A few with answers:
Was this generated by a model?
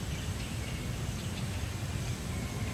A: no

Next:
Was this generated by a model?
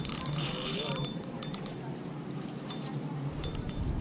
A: yes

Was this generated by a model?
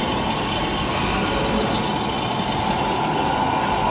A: no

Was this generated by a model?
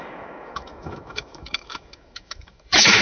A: yes